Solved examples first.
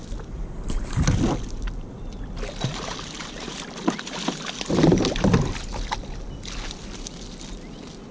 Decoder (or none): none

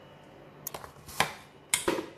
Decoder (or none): none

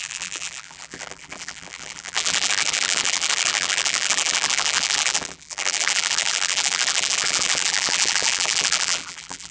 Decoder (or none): vocoder, BigVGAN v2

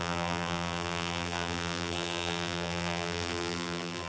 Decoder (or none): vocoder, BigVGAN v2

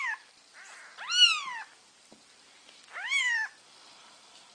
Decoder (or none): none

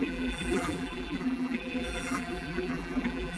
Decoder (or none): vocoder, BigVGAN v2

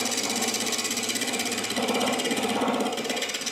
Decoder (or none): none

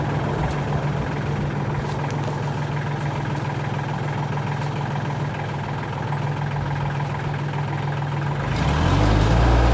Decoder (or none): none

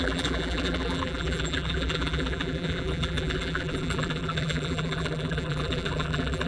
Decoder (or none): vocoder, BigVGAN v2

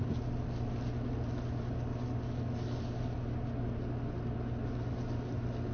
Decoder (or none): none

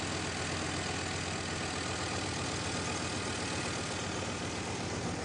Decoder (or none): none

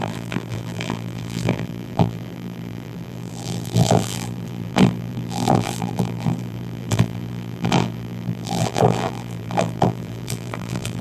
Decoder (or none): vocoder, BigVGAN v2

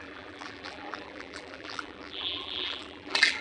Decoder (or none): vocoder, BigVGAN v2